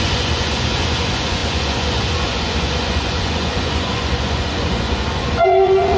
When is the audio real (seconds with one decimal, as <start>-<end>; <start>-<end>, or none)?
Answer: none